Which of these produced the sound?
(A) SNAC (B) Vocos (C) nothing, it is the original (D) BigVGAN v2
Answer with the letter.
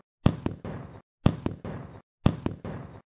C